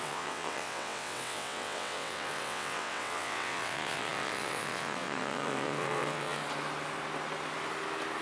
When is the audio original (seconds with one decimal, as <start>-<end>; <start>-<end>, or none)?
6.4-8.2